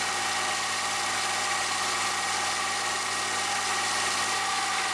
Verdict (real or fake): real